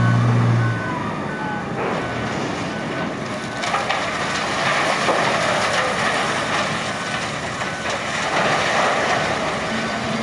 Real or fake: real